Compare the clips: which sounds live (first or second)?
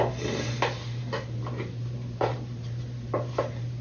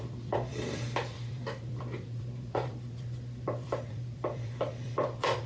first